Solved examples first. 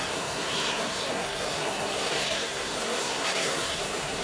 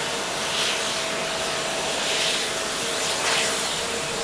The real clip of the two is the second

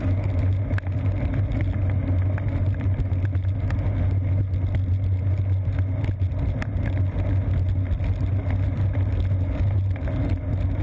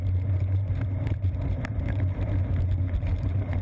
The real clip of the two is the first